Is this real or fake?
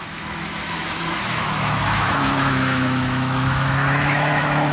fake